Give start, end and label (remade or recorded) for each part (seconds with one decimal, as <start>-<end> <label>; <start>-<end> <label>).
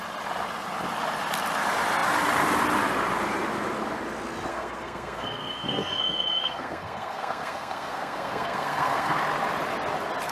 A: 0.0-4.5 recorded; 4.5-9.2 remade; 9.2-10.3 recorded